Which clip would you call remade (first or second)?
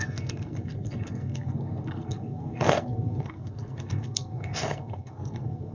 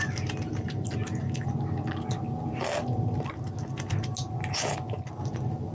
first